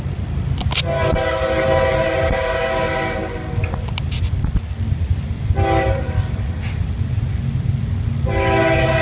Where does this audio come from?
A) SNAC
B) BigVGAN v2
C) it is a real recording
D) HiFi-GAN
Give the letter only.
C